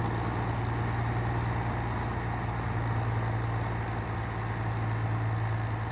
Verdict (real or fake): real